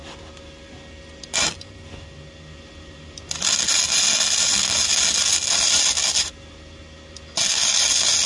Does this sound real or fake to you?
real